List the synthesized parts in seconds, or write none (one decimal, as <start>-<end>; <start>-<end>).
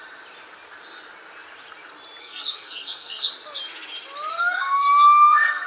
2.2-3.3; 4.3-5.7